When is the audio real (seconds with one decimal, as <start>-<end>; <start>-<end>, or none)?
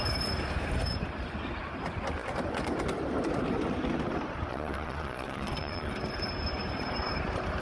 0.0-4.5; 5.9-7.6